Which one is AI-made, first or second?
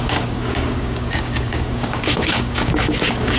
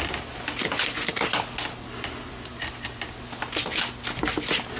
first